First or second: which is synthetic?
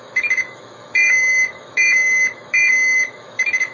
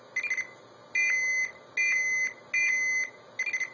first